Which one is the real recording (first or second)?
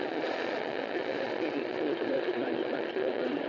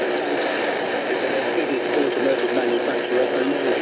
second